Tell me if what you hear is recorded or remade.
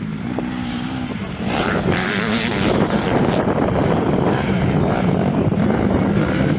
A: remade